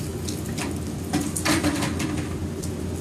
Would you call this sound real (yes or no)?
yes